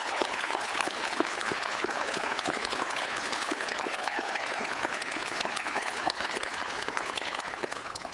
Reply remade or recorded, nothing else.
remade